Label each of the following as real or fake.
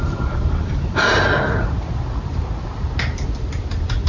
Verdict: real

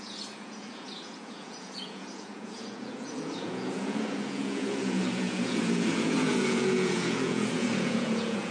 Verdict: fake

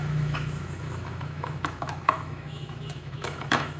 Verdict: fake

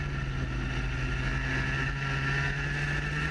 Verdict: real